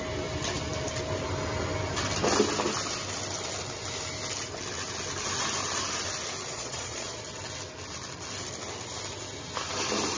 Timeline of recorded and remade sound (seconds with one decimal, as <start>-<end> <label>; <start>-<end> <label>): 0.0-6.5 recorded; 6.5-7.2 remade; 7.2-10.2 recorded